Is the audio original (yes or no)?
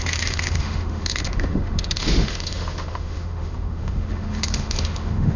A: no